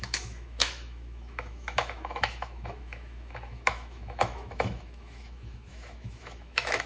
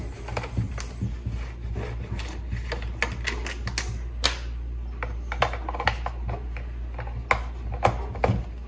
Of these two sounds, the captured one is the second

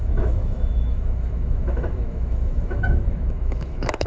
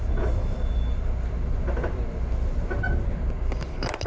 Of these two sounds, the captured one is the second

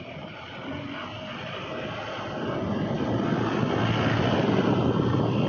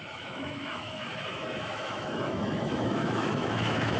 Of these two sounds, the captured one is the first